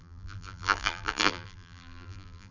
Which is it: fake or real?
fake